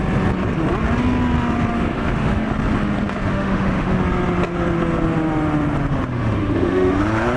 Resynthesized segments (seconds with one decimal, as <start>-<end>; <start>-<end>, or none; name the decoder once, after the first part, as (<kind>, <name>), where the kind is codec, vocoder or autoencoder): 1.7-2.5 (autoencoder, DAC-VAE); 3.3-4.0; 6.1-7.0